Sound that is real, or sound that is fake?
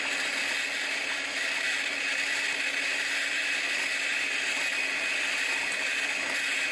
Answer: real